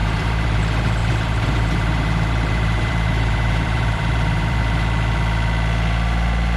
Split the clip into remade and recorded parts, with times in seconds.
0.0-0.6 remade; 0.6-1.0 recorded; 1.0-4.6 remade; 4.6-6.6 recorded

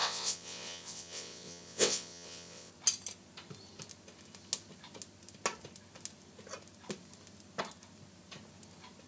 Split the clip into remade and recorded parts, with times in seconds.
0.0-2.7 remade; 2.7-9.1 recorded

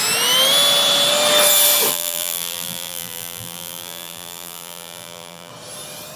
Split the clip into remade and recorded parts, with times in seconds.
0.0-1.9 recorded; 1.9-5.5 remade; 5.5-6.2 recorded